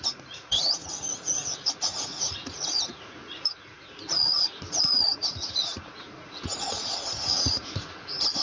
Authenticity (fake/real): fake